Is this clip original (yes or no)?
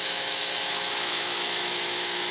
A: no